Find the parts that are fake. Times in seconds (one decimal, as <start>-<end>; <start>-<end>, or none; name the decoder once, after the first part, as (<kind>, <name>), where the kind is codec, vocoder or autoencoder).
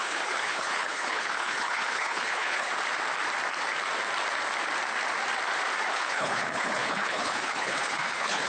0.0-2.7 (codec, HILCodec); 5.9-8.5